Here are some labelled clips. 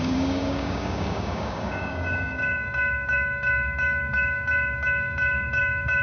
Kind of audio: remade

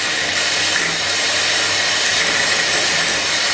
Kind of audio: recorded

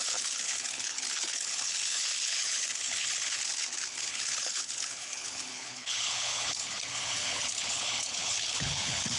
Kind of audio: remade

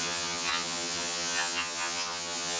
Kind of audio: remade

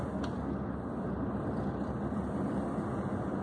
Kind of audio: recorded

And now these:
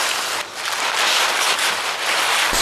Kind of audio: recorded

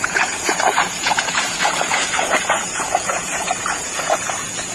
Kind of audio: remade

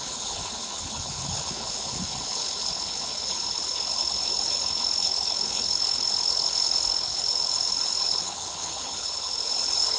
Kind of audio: remade